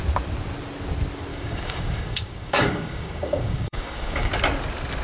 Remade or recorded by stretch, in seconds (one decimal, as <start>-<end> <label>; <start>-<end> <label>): 0.0-1.3 recorded; 1.3-4.3 remade; 4.3-5.0 recorded